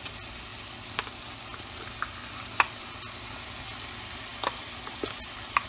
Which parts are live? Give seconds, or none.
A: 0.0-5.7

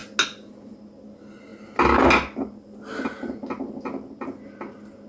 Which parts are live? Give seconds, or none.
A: 0.0-5.1

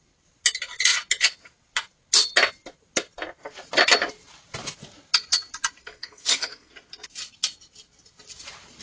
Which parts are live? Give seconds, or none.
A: 0.0-5.8; 6.7-8.8

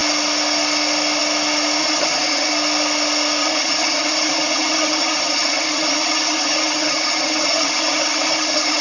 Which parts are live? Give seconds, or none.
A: 0.0-1.8; 2.5-3.4